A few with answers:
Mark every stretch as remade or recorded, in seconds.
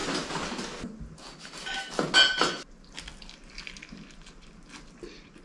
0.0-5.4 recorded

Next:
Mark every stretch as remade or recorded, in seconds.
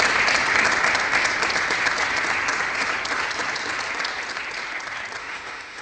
0.0-5.2 recorded; 5.2-5.8 remade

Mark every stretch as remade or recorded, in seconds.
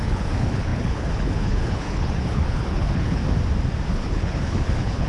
0.0-3.2 remade; 3.2-3.9 recorded; 3.9-5.1 remade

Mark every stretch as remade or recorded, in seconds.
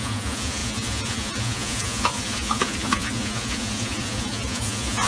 0.0-5.1 remade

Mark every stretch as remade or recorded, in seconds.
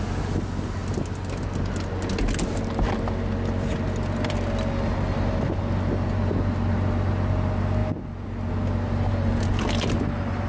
0.0-10.5 recorded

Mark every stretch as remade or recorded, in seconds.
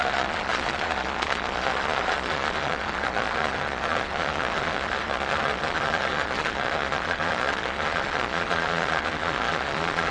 0.0-10.1 remade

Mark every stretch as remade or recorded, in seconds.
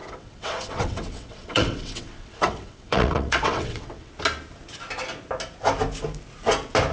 0.0-4.1 remade; 4.1-6.9 recorded